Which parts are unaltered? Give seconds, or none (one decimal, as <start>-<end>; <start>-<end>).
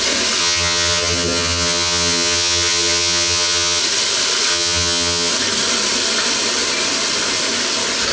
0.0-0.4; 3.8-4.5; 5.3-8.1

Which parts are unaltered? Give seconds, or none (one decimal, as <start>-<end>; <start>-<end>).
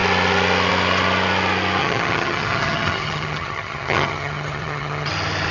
0.0-1.8; 5.1-5.5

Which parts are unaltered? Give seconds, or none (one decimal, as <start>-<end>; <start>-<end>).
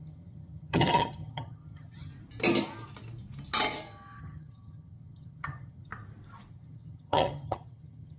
2.1-4.2; 5.9-6.5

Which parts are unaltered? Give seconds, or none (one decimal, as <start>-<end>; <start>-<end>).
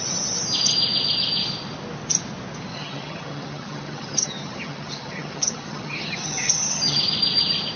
0.0-2.7; 7.0-7.8